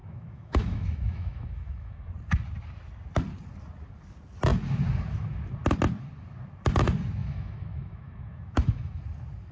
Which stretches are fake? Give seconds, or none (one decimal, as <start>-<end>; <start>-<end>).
0.0-2.1; 7.2-9.0